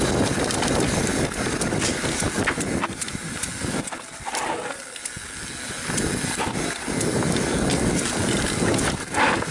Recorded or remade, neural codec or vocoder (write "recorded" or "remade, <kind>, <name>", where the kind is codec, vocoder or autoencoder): recorded